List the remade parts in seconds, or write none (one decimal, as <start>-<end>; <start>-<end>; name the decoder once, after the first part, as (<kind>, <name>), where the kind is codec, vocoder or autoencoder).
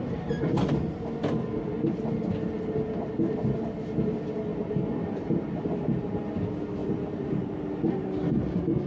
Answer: 4.5-6.2 (vocoder, BigVGAN v2); 6.8-7.7